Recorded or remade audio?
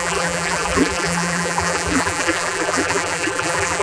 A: remade